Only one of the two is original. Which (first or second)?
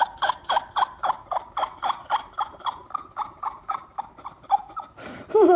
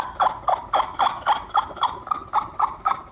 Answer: second